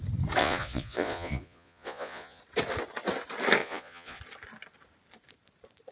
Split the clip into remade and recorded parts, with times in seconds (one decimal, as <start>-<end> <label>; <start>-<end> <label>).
0.0-0.4 recorded; 0.4-2.4 remade; 2.4-3.6 recorded; 3.6-4.2 remade; 4.2-5.9 recorded